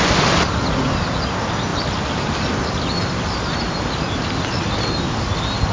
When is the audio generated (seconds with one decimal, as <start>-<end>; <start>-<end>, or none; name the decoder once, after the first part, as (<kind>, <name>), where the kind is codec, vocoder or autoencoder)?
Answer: none